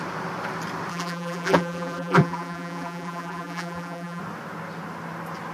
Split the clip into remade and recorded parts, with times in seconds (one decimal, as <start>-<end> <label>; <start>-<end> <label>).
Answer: 0.0-0.9 recorded; 0.9-4.2 remade; 4.2-5.5 recorded